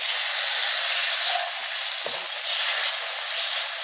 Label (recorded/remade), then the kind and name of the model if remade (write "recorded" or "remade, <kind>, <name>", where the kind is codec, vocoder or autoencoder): recorded